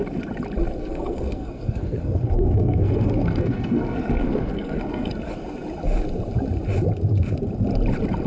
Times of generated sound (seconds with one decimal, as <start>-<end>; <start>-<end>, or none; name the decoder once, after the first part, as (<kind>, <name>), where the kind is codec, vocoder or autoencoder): 0.8-5.1 (codec, SNAC)